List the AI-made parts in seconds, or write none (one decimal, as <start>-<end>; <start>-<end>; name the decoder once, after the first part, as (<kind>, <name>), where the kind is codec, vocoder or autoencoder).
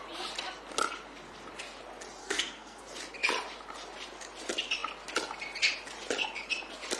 2.2-2.8 (codec, SNAC)